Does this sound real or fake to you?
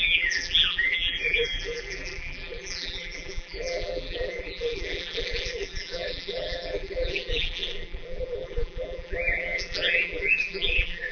fake